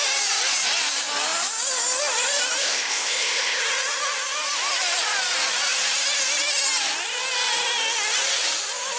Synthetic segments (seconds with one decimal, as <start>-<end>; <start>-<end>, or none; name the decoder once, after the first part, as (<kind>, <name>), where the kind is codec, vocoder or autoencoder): 2.6-3.6 (codec, ZipCodec)